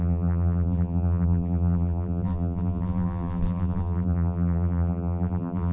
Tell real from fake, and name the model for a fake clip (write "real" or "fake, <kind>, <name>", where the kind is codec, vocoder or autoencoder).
fake, vocoder, BigVGAN v2